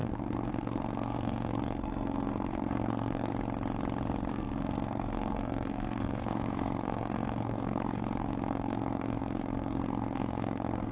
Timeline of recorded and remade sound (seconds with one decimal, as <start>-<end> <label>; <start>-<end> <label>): 0.0-3.3 remade; 3.3-4.3 recorded; 4.3-10.9 remade